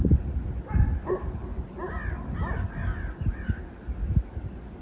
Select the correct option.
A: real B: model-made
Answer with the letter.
A